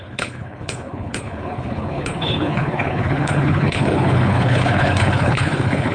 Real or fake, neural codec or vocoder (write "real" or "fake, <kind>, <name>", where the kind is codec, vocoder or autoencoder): fake, codec, HILCodec